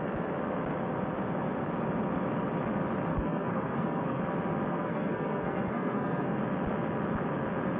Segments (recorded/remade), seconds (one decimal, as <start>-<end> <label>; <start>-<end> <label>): 0.0-3.1 recorded; 3.1-4.2 remade; 4.2-4.7 recorded; 4.7-6.4 remade; 6.4-7.8 recorded